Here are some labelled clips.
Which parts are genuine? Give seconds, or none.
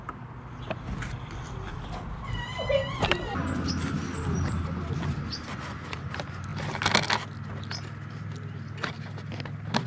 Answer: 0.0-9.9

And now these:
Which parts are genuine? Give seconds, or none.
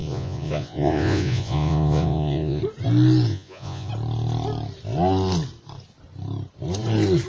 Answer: 2.6-3.3; 3.9-7.3